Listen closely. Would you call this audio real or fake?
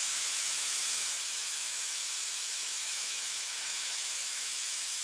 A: fake